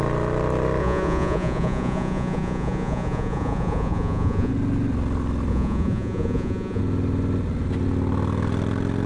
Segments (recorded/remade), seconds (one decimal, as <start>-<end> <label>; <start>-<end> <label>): 0.0-0.8 recorded; 0.8-4.5 remade; 4.5-5.5 recorded; 5.5-6.8 remade; 6.8-9.1 recorded